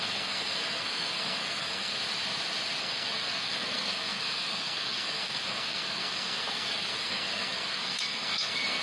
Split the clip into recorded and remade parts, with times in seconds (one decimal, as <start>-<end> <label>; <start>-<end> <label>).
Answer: 0.0-2.0 remade; 2.0-2.8 recorded; 2.8-8.8 remade